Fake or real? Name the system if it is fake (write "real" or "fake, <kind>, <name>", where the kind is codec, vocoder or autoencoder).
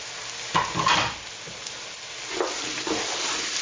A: real